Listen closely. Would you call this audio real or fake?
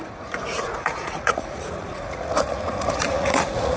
fake